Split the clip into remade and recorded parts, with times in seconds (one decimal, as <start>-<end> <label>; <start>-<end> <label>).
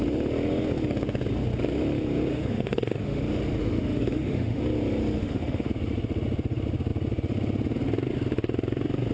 0.0-2.3 recorded; 2.3-3.2 remade; 3.2-3.6 recorded; 3.6-4.6 remade; 4.6-5.2 recorded; 5.2-5.7 remade; 5.7-9.1 recorded